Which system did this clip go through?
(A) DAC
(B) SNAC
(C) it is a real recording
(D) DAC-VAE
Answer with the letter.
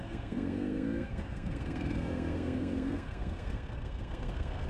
B